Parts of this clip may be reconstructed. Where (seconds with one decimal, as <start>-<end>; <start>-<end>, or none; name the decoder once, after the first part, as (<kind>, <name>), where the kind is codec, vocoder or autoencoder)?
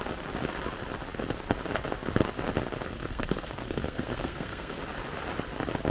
2.9-4.8 (codec, SNAC)